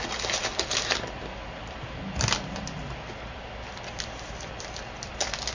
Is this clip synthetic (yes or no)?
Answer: no